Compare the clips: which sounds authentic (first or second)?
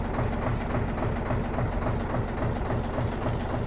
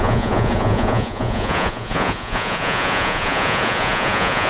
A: first